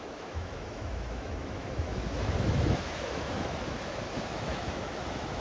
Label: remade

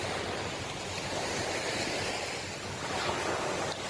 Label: recorded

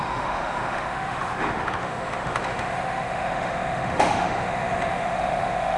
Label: remade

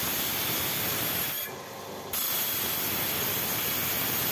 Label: recorded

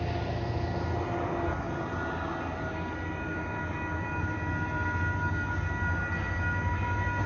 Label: recorded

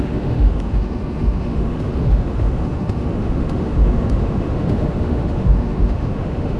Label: remade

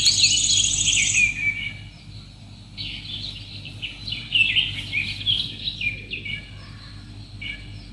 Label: recorded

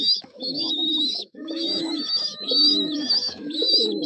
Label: remade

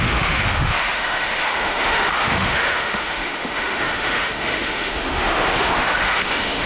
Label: remade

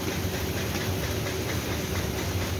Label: recorded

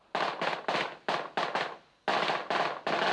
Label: recorded